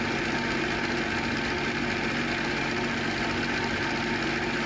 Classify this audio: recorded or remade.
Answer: recorded